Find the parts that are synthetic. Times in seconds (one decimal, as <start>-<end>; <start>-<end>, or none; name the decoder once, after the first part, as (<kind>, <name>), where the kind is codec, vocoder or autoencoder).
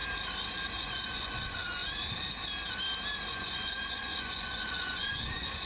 0.8-1.8 (vocoder, Vocos); 3.3-5.7